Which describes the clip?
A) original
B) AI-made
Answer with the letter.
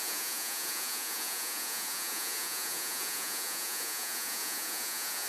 B